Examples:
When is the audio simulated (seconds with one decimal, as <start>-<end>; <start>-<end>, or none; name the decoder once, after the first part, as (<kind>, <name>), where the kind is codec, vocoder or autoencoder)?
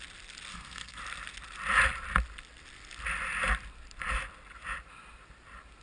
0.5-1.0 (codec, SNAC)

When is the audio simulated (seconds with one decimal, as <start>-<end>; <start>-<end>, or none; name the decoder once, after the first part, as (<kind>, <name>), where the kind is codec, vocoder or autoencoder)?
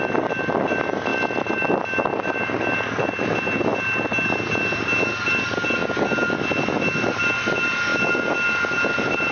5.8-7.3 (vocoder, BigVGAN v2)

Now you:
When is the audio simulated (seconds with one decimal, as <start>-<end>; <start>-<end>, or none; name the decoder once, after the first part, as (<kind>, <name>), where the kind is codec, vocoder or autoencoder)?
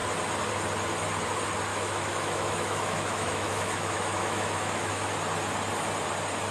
1.7-5.1 (autoencoder, DAC-VAE)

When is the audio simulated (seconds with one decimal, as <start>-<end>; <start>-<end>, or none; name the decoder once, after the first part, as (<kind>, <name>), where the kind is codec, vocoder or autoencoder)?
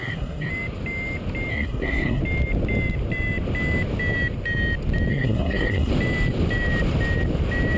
0.0-0.5 (codec, SNAC); 1.5-2.2; 5.1-5.9